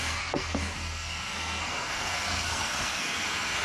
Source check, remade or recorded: remade